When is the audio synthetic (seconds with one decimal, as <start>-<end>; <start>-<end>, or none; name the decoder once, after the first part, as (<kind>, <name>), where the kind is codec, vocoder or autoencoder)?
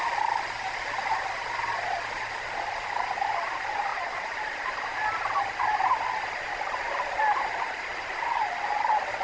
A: 3.9-4.7 (vocoder, BigVGAN v2); 7.9-8.5